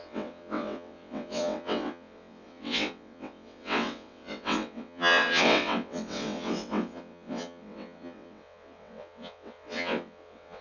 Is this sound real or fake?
fake